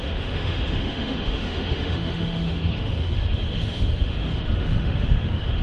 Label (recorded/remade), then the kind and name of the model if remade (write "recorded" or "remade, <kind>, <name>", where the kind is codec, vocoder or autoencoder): remade, autoencoder, DAC-VAE